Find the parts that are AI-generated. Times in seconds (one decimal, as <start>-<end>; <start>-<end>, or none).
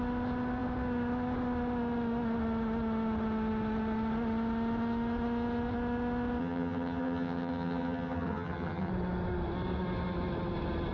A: 6.4-8.9